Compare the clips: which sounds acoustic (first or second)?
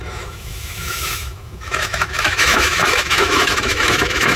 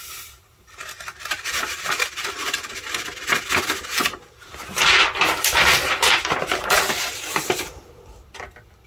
second